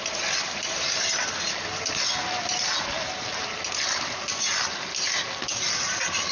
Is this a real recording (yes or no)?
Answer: yes